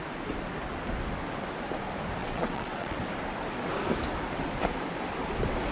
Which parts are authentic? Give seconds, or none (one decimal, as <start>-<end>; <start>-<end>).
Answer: 0.0-2.2; 3.0-5.7